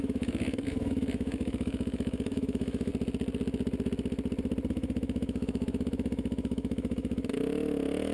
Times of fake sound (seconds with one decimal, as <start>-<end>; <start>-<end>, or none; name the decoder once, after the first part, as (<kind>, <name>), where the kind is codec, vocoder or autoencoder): 0.0-2.9 (autoencoder, DAC-VAE); 4.7-8.1